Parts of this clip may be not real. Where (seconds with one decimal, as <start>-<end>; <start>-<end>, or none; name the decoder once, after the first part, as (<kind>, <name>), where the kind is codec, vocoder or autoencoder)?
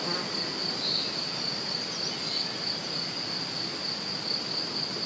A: none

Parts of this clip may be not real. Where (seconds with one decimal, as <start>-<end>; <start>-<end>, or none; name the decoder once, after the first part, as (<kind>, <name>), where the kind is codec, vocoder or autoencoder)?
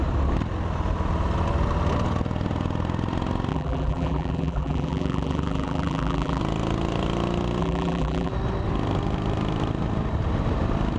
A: 3.5-6.4 (vocoder, BigVGAN v2); 7.6-8.3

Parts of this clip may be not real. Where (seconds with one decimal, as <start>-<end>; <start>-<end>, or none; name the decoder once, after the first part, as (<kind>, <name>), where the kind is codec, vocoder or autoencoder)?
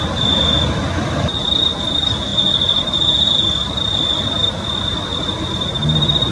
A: 2.3-6.3 (vocoder, BigVGAN v2)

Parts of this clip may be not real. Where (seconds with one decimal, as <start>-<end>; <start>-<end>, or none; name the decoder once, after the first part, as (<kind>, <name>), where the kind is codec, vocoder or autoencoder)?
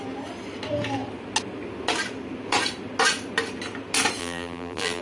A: 4.2-5.0 (vocoder, BigVGAN v2)